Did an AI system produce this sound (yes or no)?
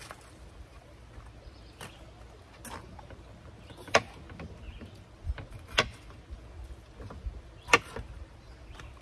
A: no